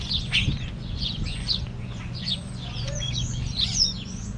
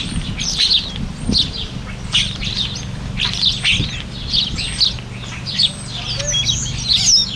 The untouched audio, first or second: second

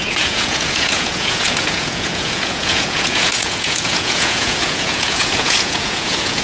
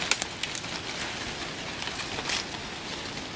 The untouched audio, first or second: second